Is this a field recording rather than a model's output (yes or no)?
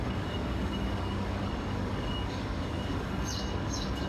no